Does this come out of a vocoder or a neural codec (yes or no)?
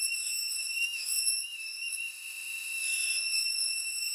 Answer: yes